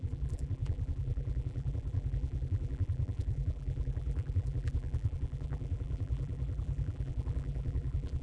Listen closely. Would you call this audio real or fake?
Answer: fake